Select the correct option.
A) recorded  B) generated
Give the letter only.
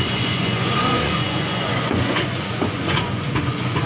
B